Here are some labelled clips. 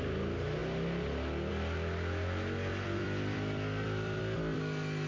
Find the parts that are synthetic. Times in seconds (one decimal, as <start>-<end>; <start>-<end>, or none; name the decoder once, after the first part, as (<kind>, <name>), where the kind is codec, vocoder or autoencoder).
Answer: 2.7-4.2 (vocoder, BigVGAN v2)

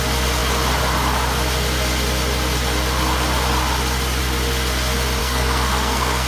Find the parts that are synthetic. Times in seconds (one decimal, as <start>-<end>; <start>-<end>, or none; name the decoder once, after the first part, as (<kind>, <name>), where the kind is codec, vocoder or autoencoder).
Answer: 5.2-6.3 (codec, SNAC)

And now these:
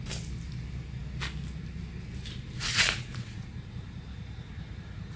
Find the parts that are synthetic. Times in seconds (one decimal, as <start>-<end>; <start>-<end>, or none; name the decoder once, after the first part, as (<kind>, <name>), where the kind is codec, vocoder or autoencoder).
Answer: 2.7-3.5 (vocoder, Vocos); 4.1-5.2

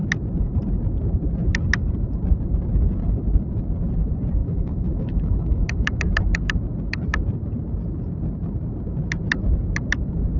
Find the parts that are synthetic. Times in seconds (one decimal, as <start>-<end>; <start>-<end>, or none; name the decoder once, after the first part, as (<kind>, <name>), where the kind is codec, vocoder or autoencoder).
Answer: 4.4-6.0 (autoencoder, DAC-VAE)

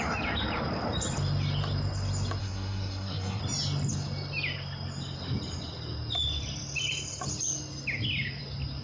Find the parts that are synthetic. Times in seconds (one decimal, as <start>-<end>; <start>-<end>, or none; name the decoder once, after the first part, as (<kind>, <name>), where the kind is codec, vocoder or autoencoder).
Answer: 2.4-3.4 (codec, SNAC)

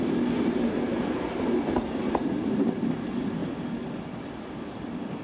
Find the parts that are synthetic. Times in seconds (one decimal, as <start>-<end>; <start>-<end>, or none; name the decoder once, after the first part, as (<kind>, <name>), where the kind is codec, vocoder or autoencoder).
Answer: none